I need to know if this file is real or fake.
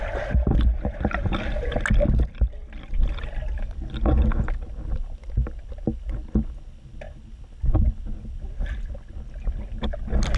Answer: real